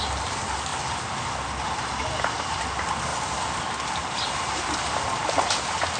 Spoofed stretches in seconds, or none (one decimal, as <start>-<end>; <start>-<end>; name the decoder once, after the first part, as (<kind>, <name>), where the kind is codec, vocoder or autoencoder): none